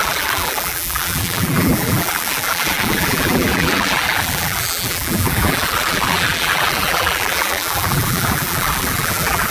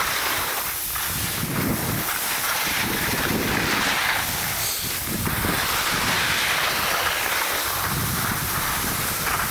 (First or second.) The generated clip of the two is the first